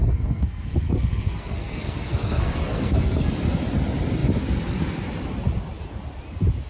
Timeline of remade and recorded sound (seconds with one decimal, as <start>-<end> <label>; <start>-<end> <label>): 0.0-3.3 remade; 3.3-6.7 recorded